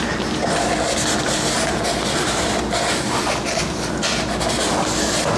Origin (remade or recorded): recorded